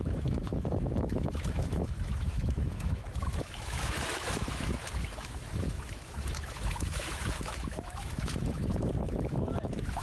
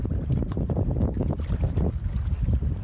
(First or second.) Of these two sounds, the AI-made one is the first